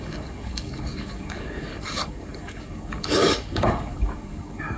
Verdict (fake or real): fake